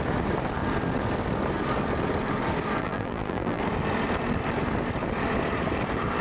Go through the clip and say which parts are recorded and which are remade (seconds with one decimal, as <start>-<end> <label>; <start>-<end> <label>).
0.0-2.8 recorded; 2.8-3.6 remade; 3.6-6.2 recorded